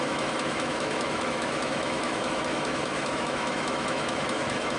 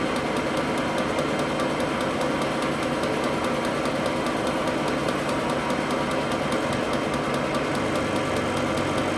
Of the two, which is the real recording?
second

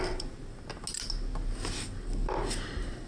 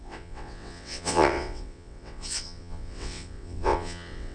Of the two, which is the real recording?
first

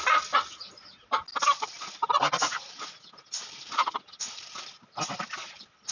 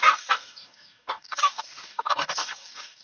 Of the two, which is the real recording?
first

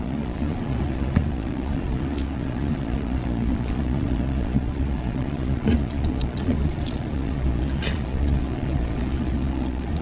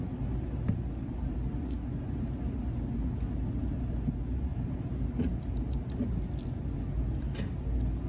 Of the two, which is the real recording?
second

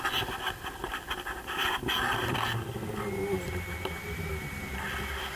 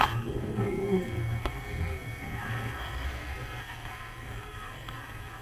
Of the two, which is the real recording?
first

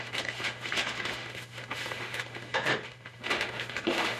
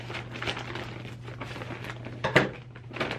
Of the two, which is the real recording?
second